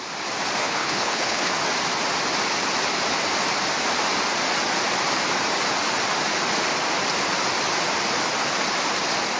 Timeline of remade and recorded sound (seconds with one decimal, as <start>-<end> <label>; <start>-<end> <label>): 0.0-0.6 recorded; 0.6-1.5 remade; 1.5-9.4 recorded